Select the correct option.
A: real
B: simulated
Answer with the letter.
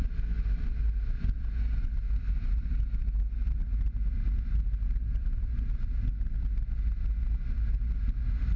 A